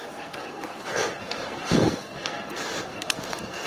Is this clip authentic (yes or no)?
no